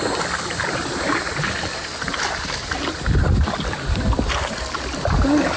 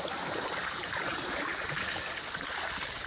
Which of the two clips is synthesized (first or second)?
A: second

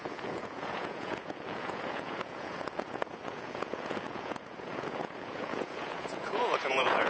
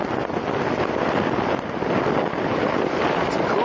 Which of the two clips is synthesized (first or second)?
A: first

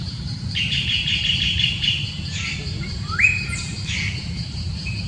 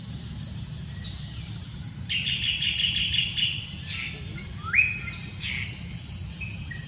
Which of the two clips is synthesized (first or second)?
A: first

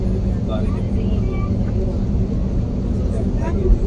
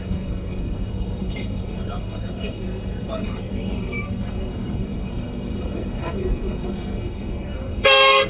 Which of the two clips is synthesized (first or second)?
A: second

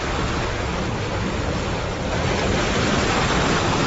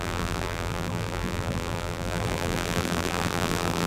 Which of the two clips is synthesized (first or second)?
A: second